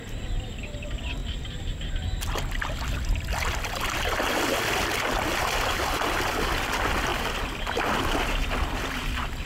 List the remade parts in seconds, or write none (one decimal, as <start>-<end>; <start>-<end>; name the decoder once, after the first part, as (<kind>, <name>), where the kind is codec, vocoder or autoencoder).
none